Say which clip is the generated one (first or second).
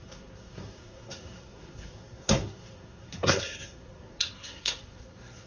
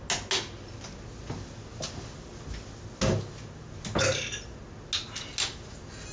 first